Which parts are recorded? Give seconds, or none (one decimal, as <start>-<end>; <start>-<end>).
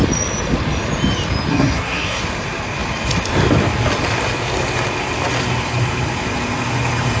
0.0-1.5; 2.2-7.2